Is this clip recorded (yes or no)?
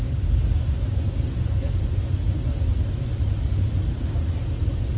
yes